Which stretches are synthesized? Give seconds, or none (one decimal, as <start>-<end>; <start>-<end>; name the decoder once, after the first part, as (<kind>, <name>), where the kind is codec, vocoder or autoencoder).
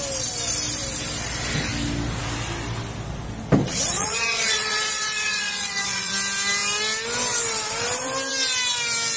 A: 3.6-6.1 (vocoder, Vocos)